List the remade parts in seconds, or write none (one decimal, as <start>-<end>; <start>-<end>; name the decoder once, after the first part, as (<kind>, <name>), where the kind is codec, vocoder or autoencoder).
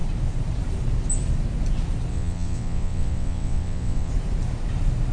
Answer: 2.1-4.1 (vocoder, WaveNeXt)